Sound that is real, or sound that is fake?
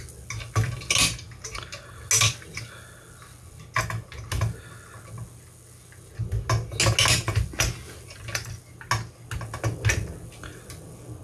real